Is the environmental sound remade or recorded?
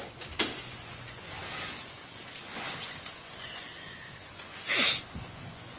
remade